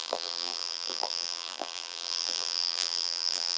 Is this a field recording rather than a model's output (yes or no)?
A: no